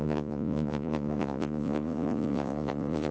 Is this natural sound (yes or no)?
no